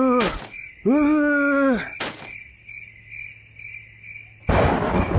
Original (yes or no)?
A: yes